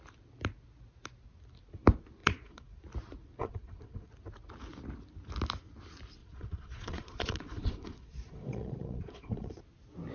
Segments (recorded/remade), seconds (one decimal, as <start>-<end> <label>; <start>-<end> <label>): 0.0-2.2 recorded; 2.2-2.8 remade; 2.8-3.4 recorded; 3.4-4.1 remade; 4.1-6.2 recorded; 6.2-9.6 remade; 9.6-10.1 recorded